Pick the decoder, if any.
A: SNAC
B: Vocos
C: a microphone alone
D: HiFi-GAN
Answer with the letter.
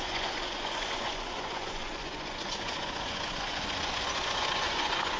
B